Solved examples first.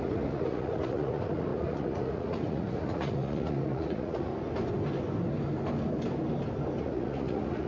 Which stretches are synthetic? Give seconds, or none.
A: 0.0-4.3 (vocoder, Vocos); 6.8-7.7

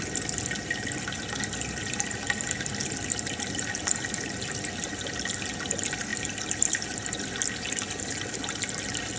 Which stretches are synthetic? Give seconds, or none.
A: none

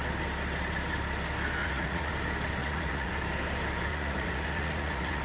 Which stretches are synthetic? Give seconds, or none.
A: 1.6-2.1 (vocoder, Vocos); 2.6-3.1; 3.9-5.2